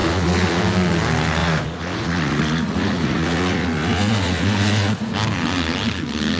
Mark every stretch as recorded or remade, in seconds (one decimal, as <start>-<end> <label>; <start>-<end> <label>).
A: 0.0-0.6 remade; 0.6-1.4 recorded; 1.4-5.1 remade; 5.1-6.4 recorded